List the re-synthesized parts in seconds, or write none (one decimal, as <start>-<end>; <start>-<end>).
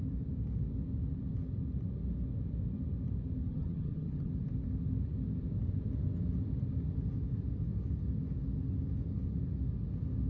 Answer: 3.5-4.3